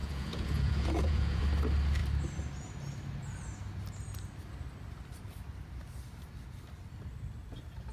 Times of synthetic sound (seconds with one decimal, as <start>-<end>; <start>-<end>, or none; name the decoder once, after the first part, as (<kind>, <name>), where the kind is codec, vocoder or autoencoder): 0.0-1.4 (vocoder, Vocos)